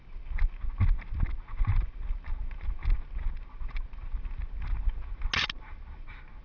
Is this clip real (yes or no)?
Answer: yes